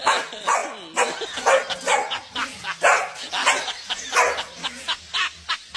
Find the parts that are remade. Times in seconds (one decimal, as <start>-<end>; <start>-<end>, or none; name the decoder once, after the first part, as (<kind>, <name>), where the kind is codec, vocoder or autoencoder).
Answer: none